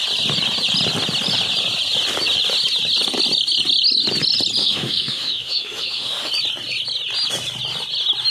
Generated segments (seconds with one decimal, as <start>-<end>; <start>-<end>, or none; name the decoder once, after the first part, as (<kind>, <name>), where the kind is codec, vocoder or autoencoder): 4.6-6.3 (autoencoder, DAC-VAE)